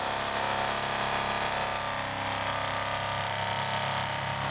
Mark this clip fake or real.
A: real